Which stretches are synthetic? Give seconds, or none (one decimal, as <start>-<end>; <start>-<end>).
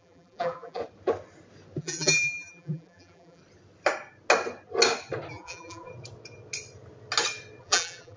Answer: 0.0-0.8; 1.8-3.4; 5.3-5.9; 7.6-8.2